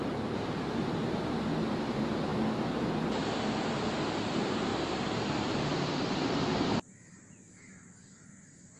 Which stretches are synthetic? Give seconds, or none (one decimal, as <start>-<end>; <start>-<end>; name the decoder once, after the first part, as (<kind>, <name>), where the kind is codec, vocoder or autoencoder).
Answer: 0.0-1.0 (vocoder, BigVGAN v2); 1.7-2.3; 4.3-8.8